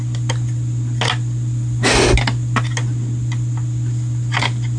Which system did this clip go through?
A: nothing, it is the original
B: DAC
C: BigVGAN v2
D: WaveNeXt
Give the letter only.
A